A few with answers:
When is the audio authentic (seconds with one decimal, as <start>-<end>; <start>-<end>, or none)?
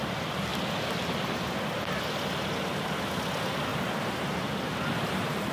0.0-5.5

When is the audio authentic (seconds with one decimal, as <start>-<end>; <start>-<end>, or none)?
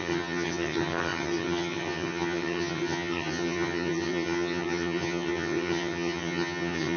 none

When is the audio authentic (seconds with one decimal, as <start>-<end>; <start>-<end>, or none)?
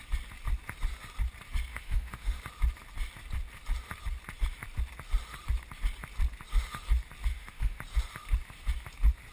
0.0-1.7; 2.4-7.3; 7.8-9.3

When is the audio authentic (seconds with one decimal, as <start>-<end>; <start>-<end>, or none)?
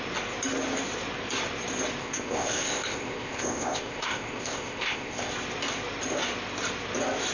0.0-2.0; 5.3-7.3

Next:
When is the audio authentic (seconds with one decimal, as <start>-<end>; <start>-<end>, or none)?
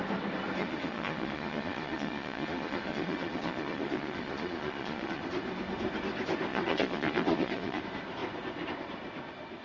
0.0-0.6; 5.2-6.5; 7.8-9.6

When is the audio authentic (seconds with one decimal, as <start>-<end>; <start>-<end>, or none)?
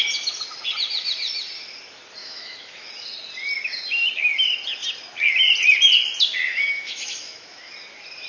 0.0-2.2; 2.9-6.5; 7.7-8.3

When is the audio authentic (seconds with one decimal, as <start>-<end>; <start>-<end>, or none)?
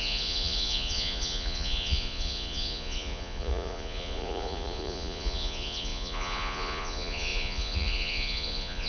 none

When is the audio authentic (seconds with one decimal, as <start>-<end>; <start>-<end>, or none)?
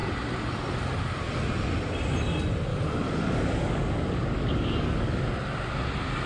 0.0-2.7; 5.2-6.3